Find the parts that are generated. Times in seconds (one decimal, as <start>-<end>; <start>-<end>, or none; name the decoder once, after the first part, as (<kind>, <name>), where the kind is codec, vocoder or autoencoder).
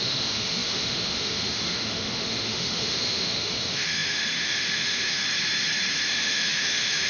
0.0-5.2 (autoencoder, DAC-VAE); 6.1-7.1